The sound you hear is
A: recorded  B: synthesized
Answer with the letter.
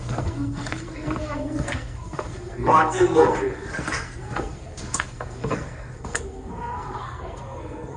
B